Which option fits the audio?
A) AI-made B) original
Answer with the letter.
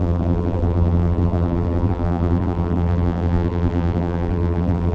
A